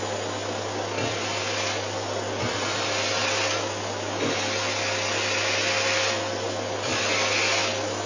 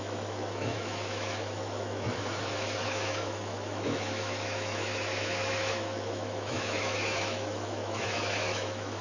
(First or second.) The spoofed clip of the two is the second